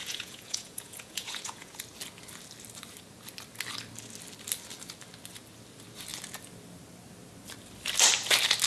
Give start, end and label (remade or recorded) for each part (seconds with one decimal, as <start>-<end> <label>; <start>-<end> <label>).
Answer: 0.0-1.8 remade; 1.8-8.7 recorded